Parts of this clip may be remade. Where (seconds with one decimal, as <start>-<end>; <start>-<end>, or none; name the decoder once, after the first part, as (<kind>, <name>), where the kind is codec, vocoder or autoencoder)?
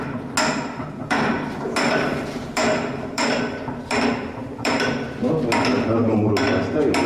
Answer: 1.0-5.3 (vocoder, BigVGAN v2); 5.7-6.4